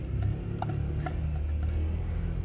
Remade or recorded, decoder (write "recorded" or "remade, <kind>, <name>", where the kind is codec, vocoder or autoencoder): recorded